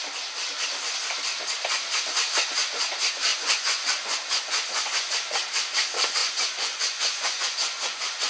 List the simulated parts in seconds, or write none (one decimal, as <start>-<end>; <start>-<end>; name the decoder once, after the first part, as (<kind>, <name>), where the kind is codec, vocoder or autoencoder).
3.3-5.1 (vocoder, Vocos); 6.2-8.3